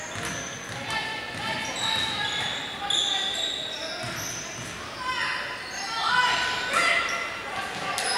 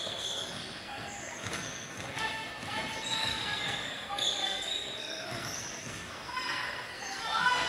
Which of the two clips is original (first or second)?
first